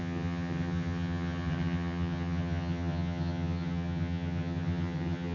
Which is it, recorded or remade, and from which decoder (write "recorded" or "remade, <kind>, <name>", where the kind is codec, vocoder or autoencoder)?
remade, vocoder, HiFi-GAN